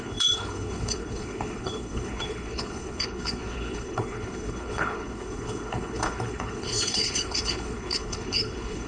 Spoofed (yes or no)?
yes